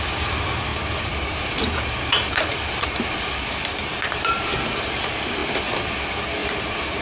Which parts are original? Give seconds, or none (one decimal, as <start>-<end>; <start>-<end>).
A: 0.0-0.7; 4.9-6.4